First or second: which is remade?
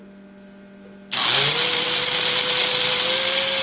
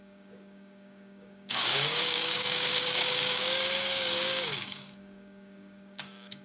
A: second